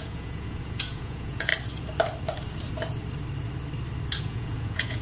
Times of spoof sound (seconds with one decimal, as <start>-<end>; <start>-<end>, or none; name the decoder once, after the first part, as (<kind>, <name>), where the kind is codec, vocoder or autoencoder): 0.0-1.5 (vocoder, Vocos); 4.2-5.0